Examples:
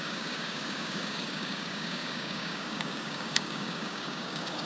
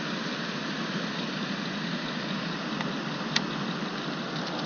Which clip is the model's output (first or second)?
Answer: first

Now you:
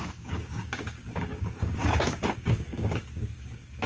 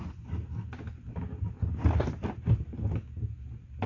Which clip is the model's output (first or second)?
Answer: first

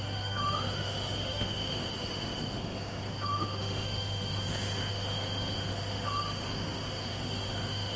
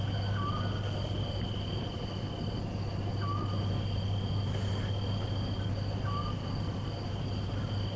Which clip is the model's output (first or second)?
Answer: first